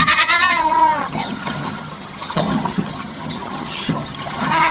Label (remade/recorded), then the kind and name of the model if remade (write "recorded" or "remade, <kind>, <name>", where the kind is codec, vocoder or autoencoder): remade, vocoder, HiFi-GAN